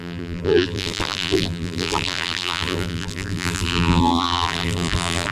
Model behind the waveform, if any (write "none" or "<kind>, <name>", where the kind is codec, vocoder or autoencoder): vocoder, BigVGAN v2